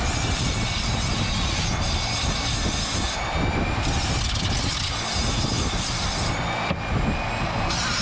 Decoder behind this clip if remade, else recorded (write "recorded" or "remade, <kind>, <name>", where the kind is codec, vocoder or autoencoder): recorded